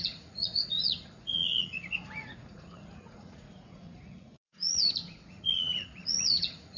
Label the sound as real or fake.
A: fake